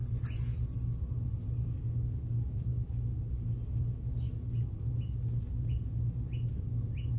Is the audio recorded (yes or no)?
yes